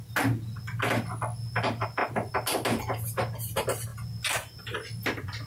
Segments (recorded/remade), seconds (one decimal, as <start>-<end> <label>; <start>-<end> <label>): 0.0-5.5 recorded